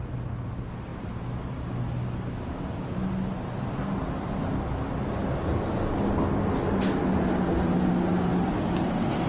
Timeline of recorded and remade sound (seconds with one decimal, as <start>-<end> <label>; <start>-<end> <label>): 0.0-9.3 recorded